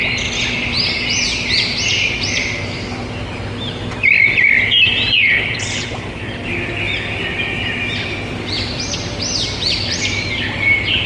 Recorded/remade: remade